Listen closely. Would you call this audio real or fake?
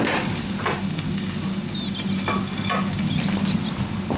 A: real